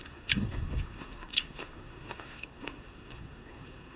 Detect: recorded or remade remade